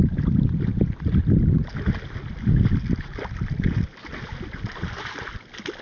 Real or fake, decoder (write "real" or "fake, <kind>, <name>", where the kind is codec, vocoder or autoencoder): real